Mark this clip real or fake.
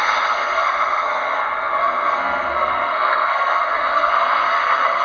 fake